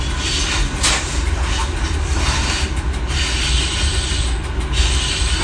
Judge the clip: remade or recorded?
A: recorded